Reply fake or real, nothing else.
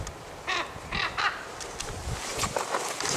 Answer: real